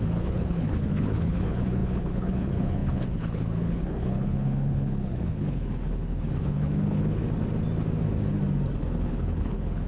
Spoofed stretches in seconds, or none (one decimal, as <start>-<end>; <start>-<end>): 0.0-7.2; 8.8-9.9